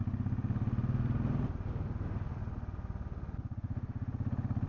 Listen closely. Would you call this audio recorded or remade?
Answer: recorded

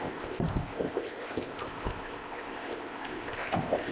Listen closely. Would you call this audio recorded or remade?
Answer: remade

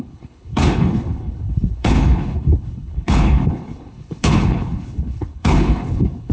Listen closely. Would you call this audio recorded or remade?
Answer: remade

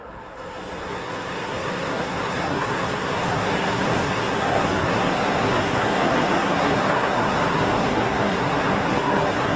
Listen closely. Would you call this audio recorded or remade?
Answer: remade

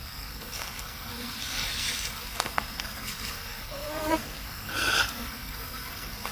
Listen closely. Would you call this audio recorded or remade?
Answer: remade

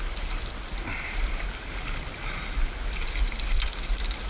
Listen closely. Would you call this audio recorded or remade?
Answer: recorded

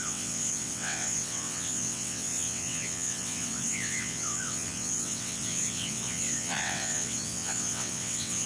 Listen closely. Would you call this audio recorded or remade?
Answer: remade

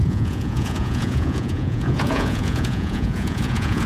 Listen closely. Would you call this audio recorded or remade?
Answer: remade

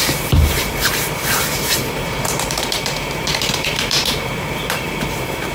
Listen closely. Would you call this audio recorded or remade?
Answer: remade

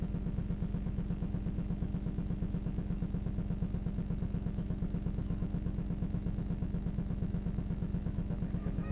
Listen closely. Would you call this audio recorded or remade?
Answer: remade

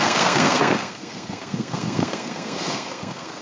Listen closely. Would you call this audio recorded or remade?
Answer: remade